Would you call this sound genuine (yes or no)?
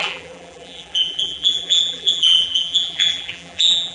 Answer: no